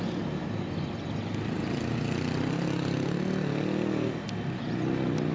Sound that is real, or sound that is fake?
real